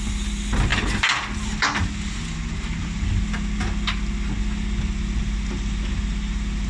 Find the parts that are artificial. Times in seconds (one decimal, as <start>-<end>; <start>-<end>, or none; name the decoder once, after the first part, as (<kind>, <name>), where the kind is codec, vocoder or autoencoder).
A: none